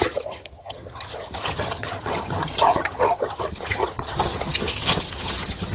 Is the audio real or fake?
fake